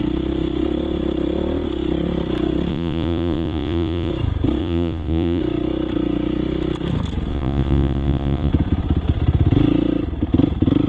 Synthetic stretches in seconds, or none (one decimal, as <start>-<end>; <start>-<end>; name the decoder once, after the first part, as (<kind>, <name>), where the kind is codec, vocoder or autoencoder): 2.7-4.1 (vocoder, Vocos); 4.6-5.4; 7.3-8.5